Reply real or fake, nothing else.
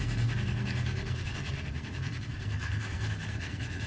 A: fake